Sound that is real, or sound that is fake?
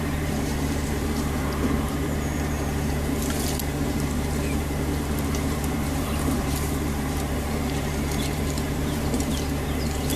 fake